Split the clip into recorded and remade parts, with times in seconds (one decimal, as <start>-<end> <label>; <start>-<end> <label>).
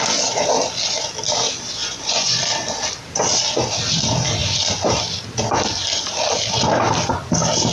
0.0-1.8 recorded; 1.8-2.4 remade; 2.4-7.7 recorded